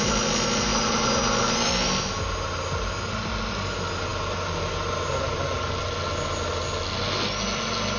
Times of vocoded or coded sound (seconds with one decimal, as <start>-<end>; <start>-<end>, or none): none